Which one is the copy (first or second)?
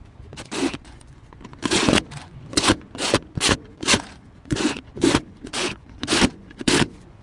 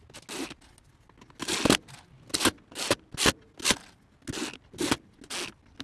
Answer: first